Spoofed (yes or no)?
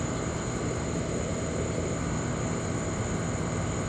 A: no